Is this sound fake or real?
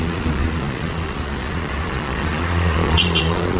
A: fake